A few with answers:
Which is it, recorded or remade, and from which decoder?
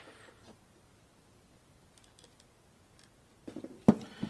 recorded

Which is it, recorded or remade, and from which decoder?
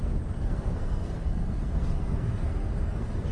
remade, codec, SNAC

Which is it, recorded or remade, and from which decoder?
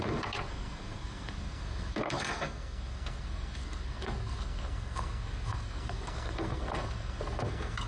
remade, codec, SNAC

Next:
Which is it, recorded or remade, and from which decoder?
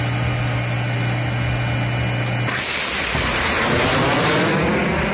recorded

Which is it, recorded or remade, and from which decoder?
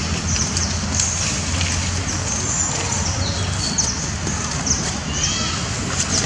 recorded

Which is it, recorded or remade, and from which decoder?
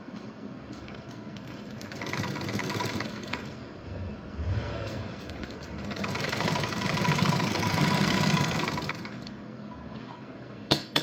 remade, codec, SNAC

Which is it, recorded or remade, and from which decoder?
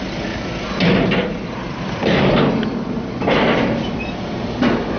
recorded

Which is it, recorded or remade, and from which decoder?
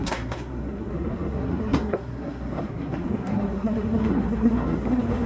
remade, codec, SNAC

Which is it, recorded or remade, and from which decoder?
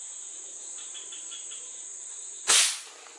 recorded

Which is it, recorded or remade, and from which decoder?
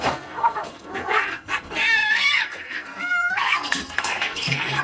remade, codec, SNAC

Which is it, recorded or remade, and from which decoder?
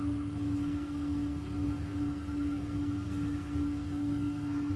remade, codec, SNAC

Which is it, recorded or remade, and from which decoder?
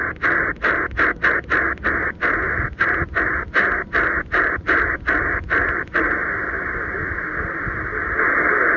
recorded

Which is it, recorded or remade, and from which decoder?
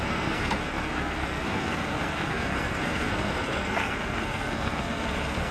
remade, codec, SNAC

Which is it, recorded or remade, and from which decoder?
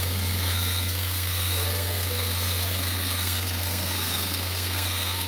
remade, codec, SNAC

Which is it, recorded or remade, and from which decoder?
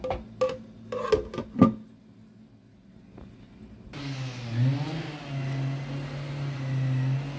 recorded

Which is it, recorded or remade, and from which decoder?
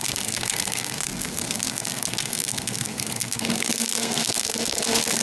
remade, codec, SNAC